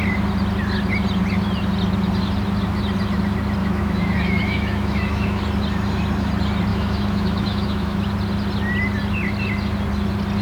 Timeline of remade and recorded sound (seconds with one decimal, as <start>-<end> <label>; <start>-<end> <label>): 0.0-3.6 recorded; 3.6-5.4 remade; 5.4-6.7 recorded; 6.7-8.0 remade; 8.0-10.4 recorded